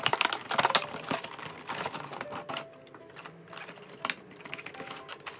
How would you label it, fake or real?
real